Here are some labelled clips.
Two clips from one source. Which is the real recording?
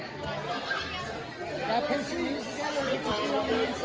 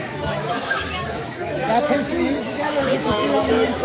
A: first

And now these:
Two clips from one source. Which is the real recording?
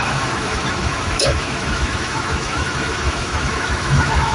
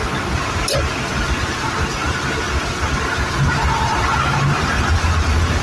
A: second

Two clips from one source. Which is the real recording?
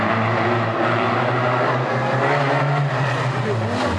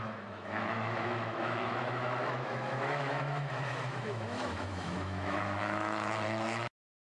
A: first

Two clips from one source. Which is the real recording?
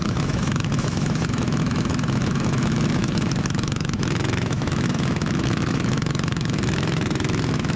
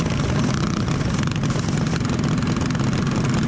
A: second